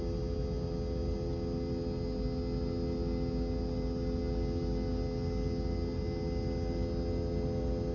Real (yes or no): yes